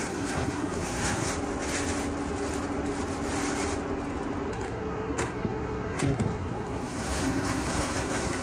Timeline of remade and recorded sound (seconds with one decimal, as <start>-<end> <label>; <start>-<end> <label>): 0.0-1.3 remade; 1.3-4.5 recorded; 4.5-8.4 remade